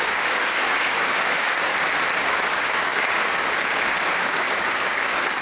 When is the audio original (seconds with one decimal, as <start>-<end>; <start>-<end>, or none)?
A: 1.7-2.2